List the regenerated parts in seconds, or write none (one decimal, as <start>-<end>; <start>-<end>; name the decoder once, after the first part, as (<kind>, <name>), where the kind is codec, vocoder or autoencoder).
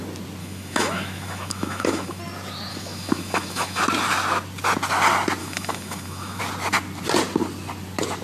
0.4-2.2 (autoencoder, DAC-VAE); 2.7-3.8; 5.4-6.4